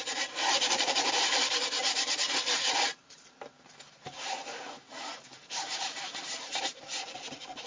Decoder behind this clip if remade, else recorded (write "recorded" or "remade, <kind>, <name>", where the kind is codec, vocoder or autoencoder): remade, vocoder, BigVGAN v2